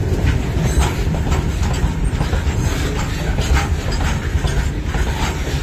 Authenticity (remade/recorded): recorded